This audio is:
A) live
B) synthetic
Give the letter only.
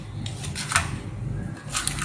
A